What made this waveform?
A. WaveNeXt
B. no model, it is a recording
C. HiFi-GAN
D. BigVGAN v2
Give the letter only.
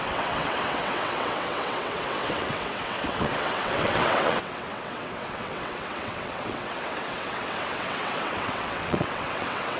A